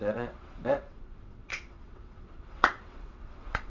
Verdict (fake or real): fake